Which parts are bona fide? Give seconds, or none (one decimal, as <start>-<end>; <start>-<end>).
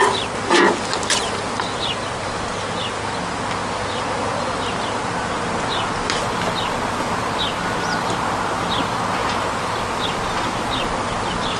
0.0-9.2; 10.1-11.6